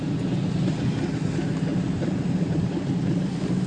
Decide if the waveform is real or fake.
real